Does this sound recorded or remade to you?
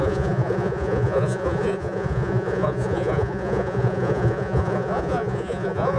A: remade